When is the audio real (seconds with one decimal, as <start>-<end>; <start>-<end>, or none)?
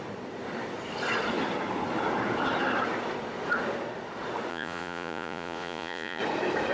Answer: 0.0-4.5; 6.2-6.7